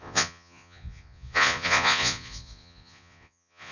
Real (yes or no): no